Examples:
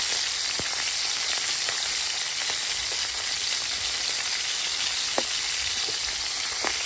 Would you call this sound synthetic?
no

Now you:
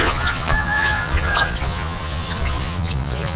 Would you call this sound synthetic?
yes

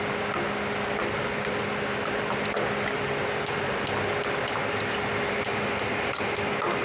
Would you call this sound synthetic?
no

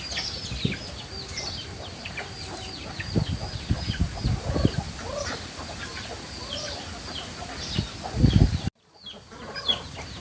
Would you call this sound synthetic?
no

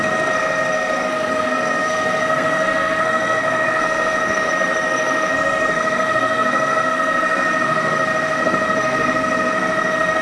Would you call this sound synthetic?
yes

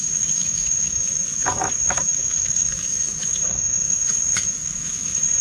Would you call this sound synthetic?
yes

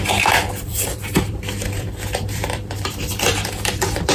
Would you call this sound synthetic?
yes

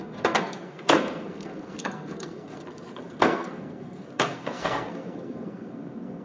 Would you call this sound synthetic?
yes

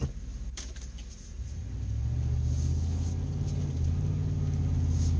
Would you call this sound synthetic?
no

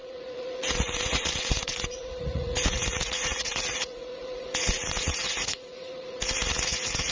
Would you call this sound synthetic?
yes